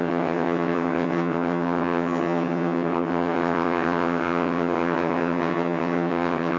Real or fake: fake